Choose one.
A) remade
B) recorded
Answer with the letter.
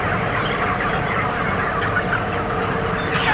A